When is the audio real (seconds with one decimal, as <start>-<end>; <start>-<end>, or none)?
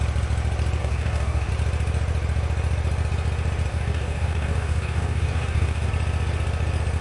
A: 0.0-0.8; 1.5-3.7; 5.9-7.0